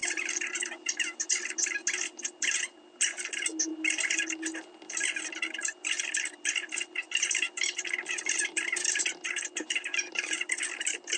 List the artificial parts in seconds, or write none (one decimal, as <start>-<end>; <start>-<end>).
none

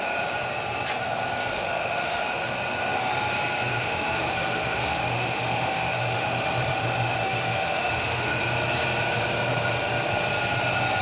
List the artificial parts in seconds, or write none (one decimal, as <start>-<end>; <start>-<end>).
1.5-2.5; 3.7-8.4

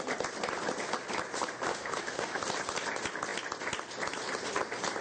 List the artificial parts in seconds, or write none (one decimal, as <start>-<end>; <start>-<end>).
1.7-2.4

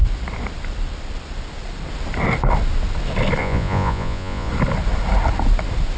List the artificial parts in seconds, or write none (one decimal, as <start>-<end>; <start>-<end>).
3.4-4.5

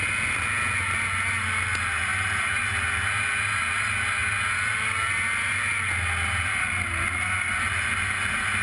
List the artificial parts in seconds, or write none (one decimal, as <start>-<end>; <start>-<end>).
none

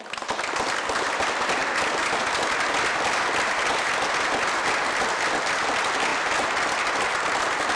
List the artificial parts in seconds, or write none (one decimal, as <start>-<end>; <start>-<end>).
none

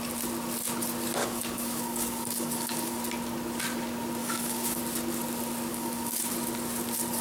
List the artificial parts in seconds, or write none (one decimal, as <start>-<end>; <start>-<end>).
1.2-3.0; 4.2-4.8; 5.7-6.3

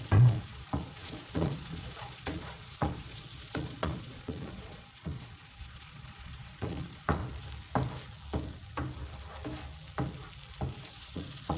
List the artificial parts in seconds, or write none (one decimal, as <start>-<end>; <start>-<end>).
0.0-7.2; 10.9-11.6